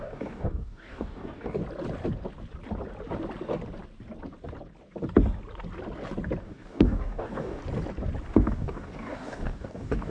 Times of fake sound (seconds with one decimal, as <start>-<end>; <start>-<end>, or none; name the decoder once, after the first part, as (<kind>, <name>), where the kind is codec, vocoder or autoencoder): 0.0-1.6 (codec, DAC); 6.4-7.6; 8.3-10.1